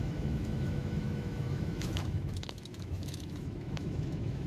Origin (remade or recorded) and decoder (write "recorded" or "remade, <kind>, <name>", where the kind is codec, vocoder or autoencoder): remade, autoencoder, DAC-VAE